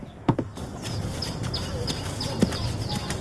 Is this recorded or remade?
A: recorded